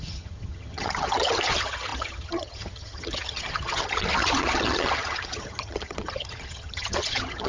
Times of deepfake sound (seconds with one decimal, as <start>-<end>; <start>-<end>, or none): 0.0-7.5